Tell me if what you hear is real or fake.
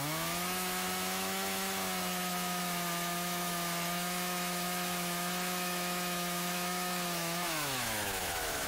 fake